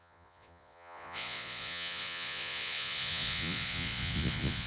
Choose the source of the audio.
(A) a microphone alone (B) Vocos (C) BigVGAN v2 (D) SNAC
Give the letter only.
B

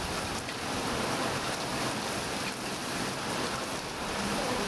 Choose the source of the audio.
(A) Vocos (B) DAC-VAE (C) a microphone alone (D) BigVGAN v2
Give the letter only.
D